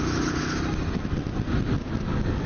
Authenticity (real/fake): real